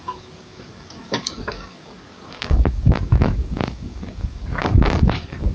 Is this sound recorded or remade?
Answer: remade